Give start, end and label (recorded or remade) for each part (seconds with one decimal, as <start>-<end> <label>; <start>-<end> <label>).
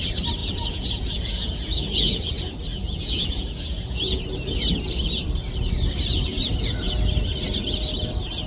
0.0-0.4 recorded; 0.4-2.3 remade; 2.3-2.7 recorded; 2.7-4.2 remade; 4.2-8.5 recorded